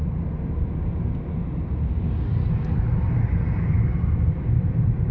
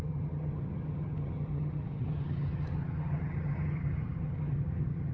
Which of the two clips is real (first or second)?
first